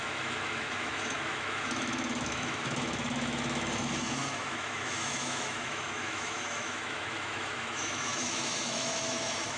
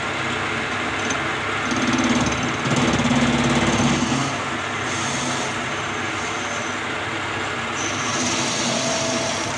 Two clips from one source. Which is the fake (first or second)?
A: first